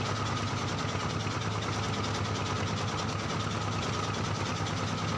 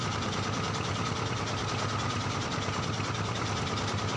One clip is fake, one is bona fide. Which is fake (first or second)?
second